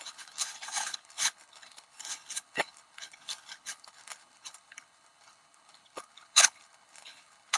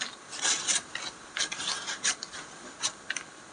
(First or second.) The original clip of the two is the second